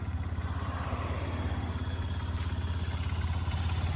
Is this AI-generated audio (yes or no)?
no